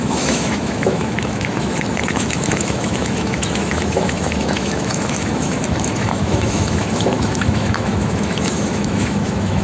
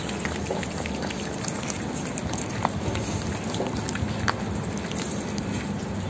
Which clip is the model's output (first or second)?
first